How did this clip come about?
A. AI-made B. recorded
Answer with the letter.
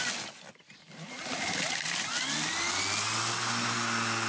B